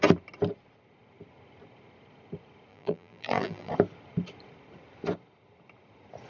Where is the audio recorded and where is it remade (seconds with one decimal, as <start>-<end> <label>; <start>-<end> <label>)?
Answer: 0.0-2.7 recorded; 2.7-3.7 remade; 3.7-6.3 recorded